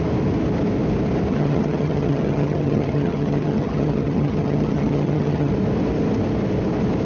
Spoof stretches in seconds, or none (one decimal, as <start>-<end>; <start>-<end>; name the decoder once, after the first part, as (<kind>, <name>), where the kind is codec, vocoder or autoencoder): 1.3-5.5 (vocoder, HiFi-GAN)